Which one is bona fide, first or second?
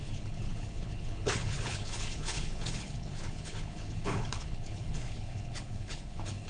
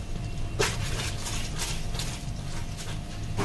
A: second